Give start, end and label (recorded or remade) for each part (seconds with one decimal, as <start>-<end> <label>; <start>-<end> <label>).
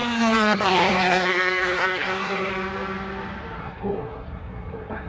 0.0-2.5 remade; 2.5-3.6 recorded; 3.6-5.1 remade